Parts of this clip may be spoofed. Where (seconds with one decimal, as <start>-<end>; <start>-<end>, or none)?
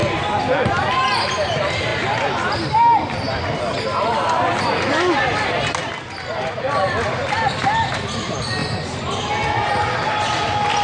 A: none